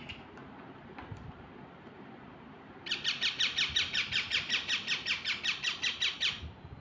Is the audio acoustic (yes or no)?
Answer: no